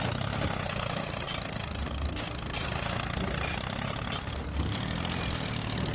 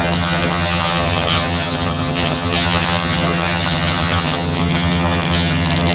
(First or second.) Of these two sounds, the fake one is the second